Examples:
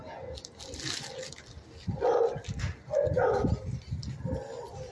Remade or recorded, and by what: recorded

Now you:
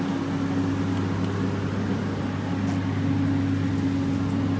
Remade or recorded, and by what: recorded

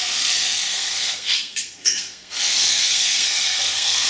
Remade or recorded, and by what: remade, codec, SNAC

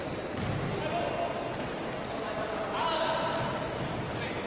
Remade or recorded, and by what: recorded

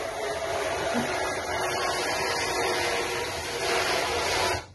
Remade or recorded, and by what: recorded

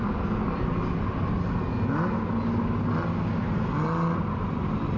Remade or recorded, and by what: recorded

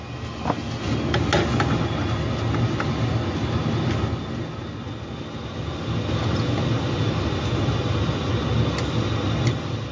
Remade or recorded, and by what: recorded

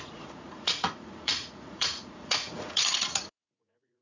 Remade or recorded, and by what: remade, vocoder, Vocos